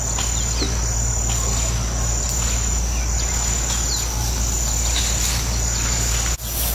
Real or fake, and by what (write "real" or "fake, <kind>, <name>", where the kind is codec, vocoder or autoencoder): real